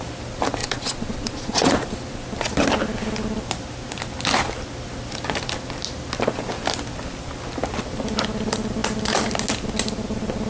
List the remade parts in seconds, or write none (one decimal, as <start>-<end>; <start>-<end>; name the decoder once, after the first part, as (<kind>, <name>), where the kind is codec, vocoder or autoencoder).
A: 0.6-1.7 (vocoder, Vocos)